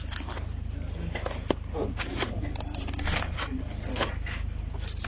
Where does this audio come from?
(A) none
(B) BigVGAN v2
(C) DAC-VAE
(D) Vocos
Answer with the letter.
A